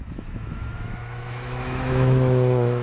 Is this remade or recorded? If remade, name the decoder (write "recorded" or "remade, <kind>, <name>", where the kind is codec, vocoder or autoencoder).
remade, autoencoder, DAC-VAE